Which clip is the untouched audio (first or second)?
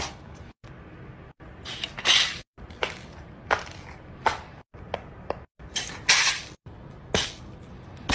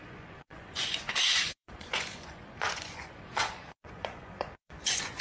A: first